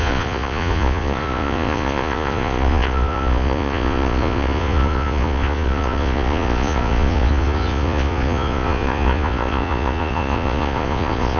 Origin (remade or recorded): remade